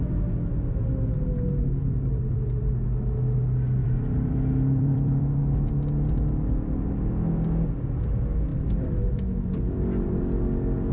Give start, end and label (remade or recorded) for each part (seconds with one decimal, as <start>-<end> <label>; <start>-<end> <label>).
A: 0.0-1.8 recorded; 1.8-2.7 remade; 2.7-3.8 recorded; 3.8-5.4 remade; 5.4-8.5 recorded; 8.5-10.2 remade; 10.2-10.9 recorded